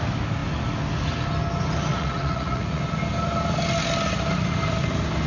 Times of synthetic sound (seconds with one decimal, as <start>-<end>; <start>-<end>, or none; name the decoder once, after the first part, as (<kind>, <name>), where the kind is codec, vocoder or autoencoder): 1.9-2.8 (vocoder, Vocos)